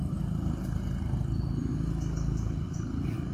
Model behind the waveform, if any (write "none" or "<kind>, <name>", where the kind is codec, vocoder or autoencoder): none